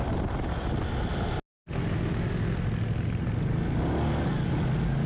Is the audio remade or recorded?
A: recorded